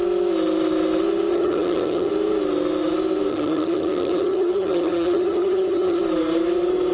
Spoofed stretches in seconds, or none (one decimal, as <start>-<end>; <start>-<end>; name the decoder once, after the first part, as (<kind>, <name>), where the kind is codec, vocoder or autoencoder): 1.3-2.1 (vocoder, HiFi-GAN); 3.3-6.0